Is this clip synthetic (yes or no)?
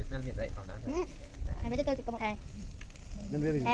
no